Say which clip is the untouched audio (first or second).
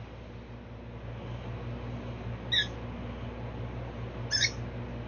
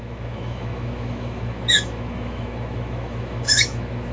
first